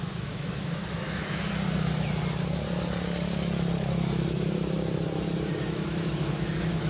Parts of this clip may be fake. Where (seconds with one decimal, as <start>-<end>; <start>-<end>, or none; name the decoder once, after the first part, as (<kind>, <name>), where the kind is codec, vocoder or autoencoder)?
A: 0.0-1.5 (autoencoder, DAC-VAE); 5.6-6.9